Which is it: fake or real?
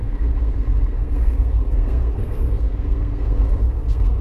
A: fake